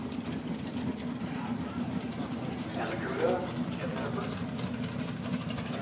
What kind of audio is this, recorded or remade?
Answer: remade